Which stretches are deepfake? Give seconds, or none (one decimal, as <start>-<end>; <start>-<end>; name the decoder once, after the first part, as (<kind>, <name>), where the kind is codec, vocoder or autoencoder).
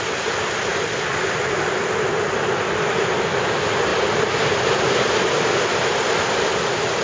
0.7-1.4 (vocoder, BigVGAN v2); 3.9-5.7